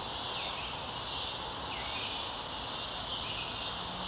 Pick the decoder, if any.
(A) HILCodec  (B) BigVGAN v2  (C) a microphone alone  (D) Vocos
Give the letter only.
C